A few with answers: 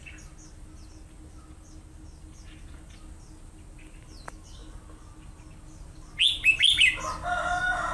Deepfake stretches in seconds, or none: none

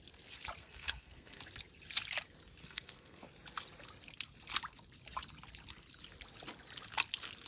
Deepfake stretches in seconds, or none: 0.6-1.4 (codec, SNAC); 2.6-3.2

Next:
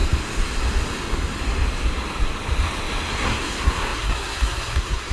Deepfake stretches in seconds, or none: 3.1-5.1 (codec, SNAC)

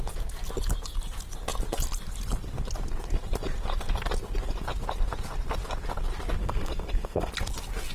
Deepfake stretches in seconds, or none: 6.4-7.3 (codec, SNAC)

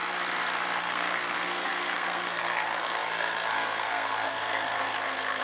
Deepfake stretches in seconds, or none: 0.8-5.4 (codec, SNAC)